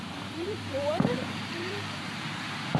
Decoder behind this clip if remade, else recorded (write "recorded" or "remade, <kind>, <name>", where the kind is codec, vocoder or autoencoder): remade, vocoder, BigVGAN v2